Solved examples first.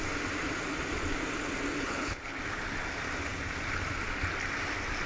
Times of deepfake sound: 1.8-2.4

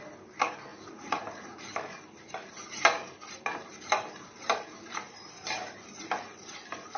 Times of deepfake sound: 0.7-1.6

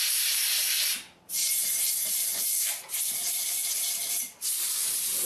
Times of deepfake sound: 0.0-1.4; 2.1-5.3

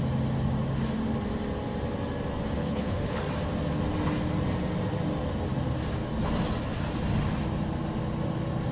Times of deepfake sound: 2.6-3.2

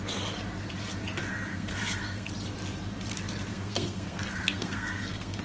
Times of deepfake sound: 1.5-2.3; 3.5-5.4

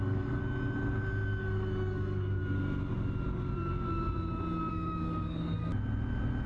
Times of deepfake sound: 0.0-0.4; 1.4-2.4; 4.7-5.7